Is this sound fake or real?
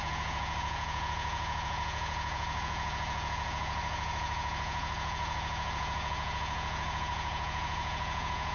fake